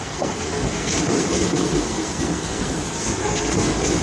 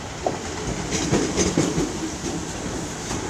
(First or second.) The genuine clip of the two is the second